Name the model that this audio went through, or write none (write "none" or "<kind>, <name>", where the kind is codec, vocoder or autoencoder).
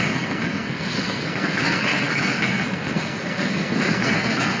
codec, SNAC